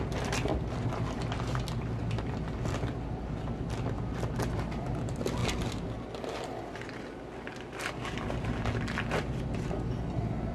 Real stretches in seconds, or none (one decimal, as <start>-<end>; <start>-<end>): 0.0-10.5